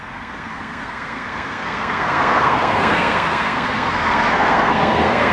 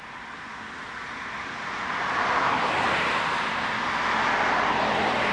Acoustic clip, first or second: second